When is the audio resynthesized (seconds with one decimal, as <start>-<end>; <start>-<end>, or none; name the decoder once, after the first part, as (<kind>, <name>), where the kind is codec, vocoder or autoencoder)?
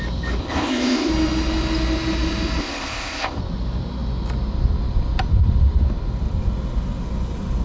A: 0.4-1.1 (codec, ZipCodec); 2.6-3.4